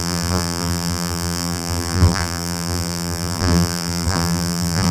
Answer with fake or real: fake